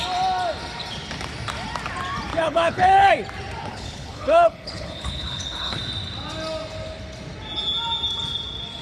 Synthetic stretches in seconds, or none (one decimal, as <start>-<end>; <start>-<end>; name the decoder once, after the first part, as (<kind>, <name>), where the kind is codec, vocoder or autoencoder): 2.3-3.1 (codec, HILCodec); 3.7-5.8